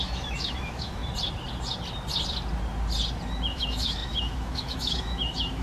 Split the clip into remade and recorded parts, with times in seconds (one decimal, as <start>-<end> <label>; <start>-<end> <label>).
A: 0.0-1.0 remade; 1.0-3.5 recorded; 3.5-5.6 remade